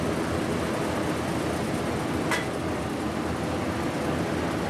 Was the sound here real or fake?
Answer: real